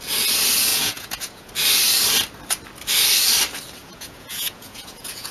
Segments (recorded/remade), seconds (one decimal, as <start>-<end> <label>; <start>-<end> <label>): 0.0-0.7 recorded; 0.7-1.5 remade; 1.5-3.8 recorded; 3.8-5.3 remade